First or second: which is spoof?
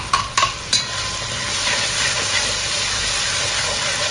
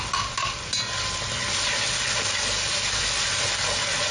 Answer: first